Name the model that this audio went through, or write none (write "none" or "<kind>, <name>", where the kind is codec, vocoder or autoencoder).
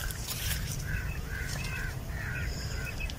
vocoder, BigVGAN v2